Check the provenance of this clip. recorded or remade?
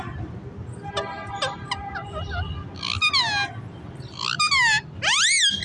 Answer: recorded